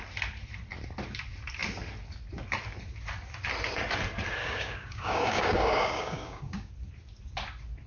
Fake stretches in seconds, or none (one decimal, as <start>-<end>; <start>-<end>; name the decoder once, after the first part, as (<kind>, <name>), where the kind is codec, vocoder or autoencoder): 4.4-6.7 (codec, DAC)